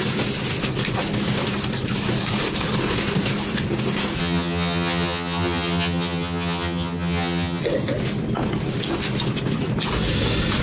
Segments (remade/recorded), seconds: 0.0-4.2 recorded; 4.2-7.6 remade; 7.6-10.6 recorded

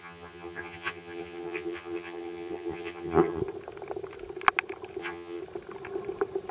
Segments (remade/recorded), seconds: 0.0-3.4 remade; 3.4-5.0 recorded; 5.0-5.4 remade; 5.4-6.5 recorded

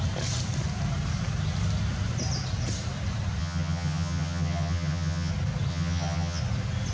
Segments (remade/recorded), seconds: 0.0-3.4 recorded; 3.4-5.3 remade; 5.3-5.7 recorded; 5.7-6.4 remade; 6.4-6.9 recorded

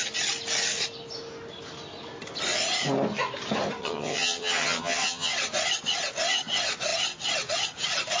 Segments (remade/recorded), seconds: 0.0-3.8 recorded; 3.8-5.3 remade; 5.3-8.2 recorded

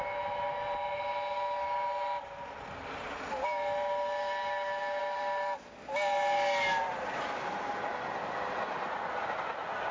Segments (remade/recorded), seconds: 0.0-9.9 recorded